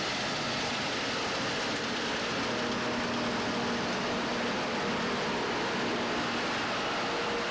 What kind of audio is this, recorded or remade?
recorded